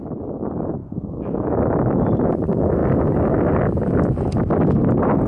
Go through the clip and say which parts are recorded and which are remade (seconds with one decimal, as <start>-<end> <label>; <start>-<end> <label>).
0.0-0.8 recorded; 0.8-2.0 remade; 2.0-5.3 recorded